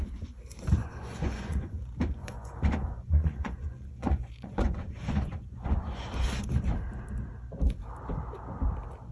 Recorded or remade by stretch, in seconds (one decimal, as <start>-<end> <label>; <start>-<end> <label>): 0.0-0.8 recorded; 0.8-1.8 remade; 1.8-2.2 recorded; 2.2-6.1 remade; 6.1-9.1 recorded